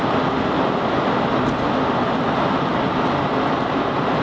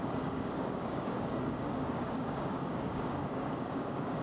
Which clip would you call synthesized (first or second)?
second